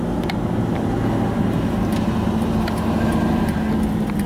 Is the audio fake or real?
real